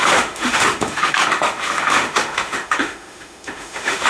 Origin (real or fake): fake